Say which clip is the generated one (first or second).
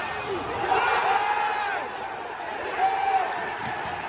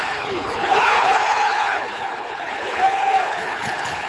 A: second